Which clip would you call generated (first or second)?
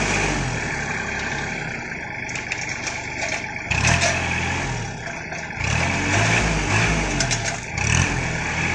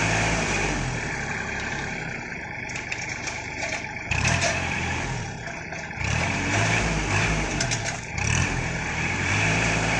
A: second